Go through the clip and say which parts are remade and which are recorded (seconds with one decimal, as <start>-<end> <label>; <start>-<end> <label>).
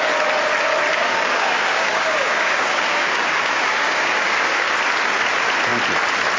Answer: 0.0-0.9 recorded; 0.9-4.7 remade; 4.7-6.4 recorded